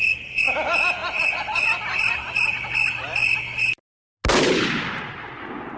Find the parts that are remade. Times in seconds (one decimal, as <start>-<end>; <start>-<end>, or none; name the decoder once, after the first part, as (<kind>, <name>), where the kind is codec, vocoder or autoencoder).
none